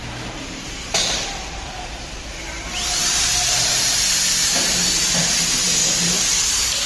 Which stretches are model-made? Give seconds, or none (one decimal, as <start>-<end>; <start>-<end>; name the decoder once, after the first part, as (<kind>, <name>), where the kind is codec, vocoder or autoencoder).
0.0-4.1 (vocoder, BigVGAN v2); 5.8-6.9